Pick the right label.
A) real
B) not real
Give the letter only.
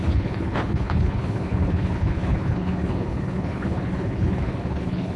B